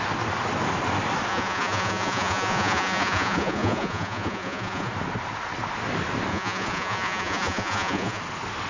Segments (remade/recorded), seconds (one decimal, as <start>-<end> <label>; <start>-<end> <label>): 0.0-1.3 recorded; 1.3-4.9 remade; 4.9-6.3 recorded; 6.3-8.2 remade; 8.2-8.7 recorded